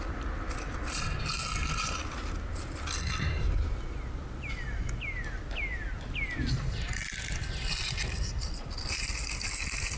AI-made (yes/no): no